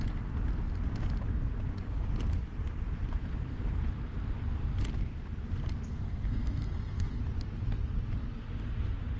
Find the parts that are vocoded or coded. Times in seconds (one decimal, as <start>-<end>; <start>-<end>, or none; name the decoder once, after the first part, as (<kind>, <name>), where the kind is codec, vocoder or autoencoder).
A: 5.9-7.2 (codec, SNAC)